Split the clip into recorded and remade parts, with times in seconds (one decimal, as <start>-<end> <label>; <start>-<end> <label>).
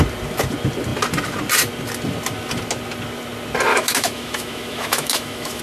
0.0-3.7 recorded; 3.7-5.6 remade